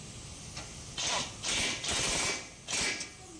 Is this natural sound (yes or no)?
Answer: yes